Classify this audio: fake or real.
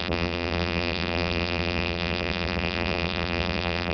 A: fake